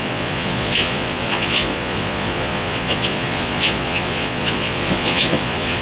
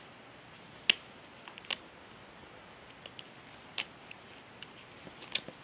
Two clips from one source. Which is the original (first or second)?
second